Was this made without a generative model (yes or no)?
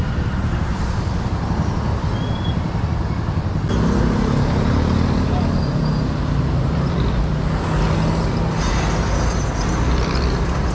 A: yes